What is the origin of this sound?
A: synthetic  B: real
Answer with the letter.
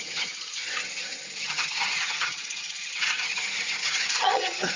A